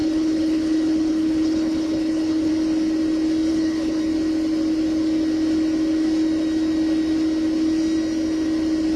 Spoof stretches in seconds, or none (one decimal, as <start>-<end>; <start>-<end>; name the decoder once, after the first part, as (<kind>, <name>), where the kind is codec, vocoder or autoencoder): 0.0-2.5 (codec, HILCodec); 3.5-4.0